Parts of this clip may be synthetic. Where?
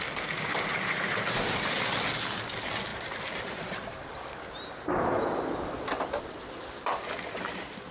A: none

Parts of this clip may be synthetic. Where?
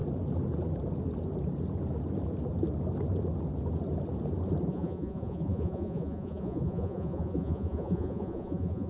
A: 4.7-8.9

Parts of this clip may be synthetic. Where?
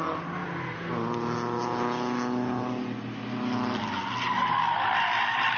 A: none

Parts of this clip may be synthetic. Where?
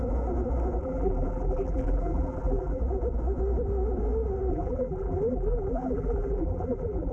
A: 0.8-2.8; 4.5-7.1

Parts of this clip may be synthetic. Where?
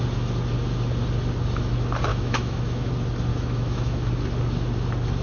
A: 2.1-2.9; 3.3-4.1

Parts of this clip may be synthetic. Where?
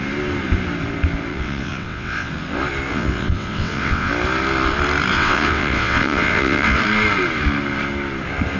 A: 1.3-2.3; 2.9-4.1; 5.1-6.8